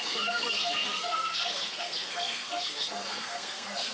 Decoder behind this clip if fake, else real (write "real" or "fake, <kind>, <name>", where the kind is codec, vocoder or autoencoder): fake, codec, SNAC